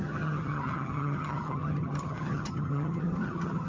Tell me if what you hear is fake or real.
fake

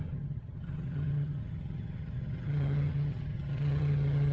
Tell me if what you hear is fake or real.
fake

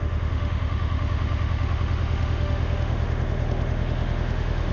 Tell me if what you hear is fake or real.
fake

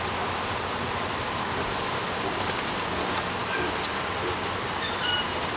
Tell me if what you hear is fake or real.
real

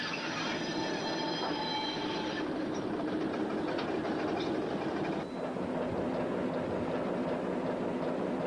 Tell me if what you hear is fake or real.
real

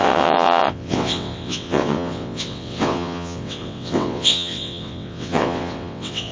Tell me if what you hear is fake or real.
fake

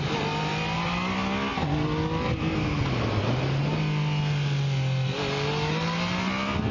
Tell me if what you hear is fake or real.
real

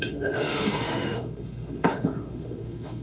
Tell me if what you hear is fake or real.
fake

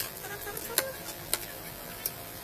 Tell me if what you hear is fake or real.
fake